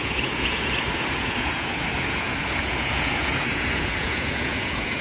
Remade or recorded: remade